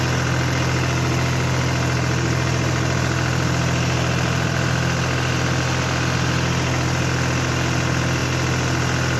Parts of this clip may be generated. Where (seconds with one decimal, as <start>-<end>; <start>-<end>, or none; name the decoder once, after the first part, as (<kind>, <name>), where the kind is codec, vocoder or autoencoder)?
none